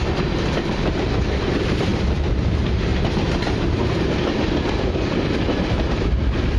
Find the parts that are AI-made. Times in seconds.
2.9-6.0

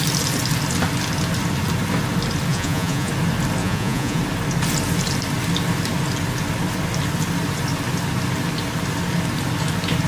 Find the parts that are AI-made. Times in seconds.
2.5-3.1; 3.6-4.2

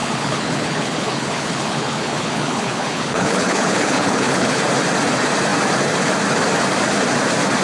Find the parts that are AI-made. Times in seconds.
0.0-4.6

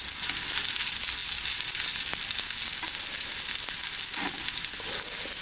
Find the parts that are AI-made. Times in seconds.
none

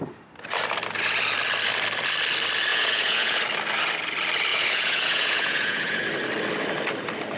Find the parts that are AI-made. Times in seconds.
2.7-3.4; 4.5-6.1

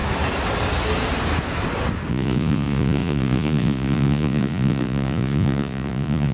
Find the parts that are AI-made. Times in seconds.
2.1-6.3

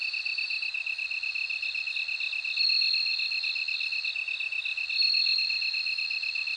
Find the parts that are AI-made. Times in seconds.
none

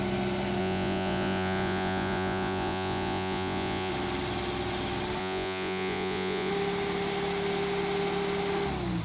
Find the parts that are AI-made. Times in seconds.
0.6-3.9; 5.2-6.5